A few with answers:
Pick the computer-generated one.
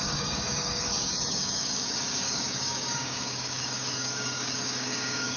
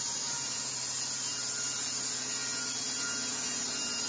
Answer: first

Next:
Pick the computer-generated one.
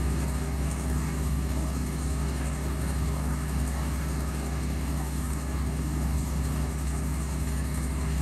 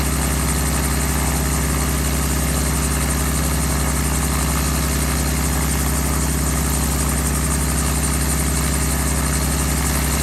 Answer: first